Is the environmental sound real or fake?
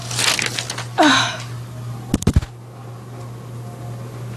real